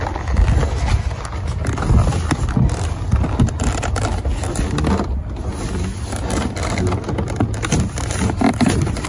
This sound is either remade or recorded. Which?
recorded